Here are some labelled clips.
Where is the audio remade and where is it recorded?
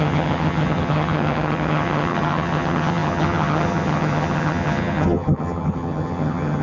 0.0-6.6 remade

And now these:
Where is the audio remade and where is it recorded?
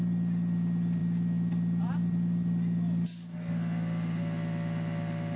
0.0-5.4 recorded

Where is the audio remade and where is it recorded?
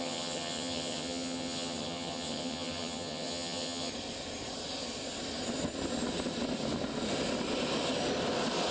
0.0-3.9 remade; 3.9-8.7 recorded